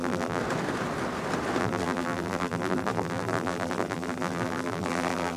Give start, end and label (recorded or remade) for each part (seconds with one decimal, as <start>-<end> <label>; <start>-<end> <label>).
0.0-0.4 remade; 0.4-1.6 recorded; 1.6-5.4 remade